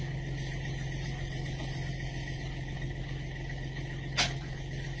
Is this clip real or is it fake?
real